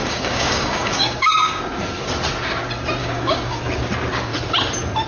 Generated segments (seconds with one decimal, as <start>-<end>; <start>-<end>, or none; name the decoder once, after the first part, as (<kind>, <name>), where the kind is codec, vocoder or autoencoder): 0.0-1.6 (codec, DAC); 3.0-3.6